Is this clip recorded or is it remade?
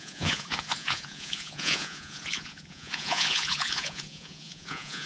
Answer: remade